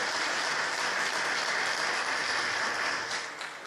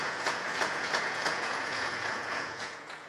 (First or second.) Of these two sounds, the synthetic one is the second